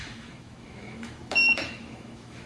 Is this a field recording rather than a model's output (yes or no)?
no